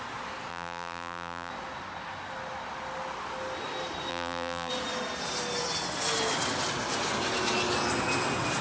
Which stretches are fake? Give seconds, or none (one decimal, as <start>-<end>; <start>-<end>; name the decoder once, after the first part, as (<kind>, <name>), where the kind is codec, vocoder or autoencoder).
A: 0.5-1.5 (vocoder, BigVGAN v2); 4.1-4.7